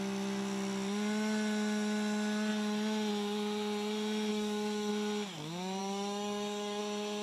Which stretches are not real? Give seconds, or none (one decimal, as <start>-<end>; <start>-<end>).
4.3-4.9; 5.8-6.8